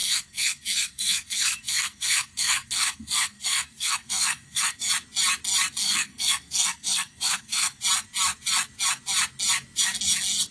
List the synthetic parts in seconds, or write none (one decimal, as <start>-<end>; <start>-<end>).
0.0-4.9; 5.8-7.8